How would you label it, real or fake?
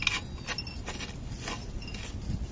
real